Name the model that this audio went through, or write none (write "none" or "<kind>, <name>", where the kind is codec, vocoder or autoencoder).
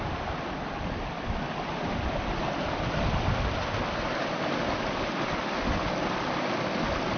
none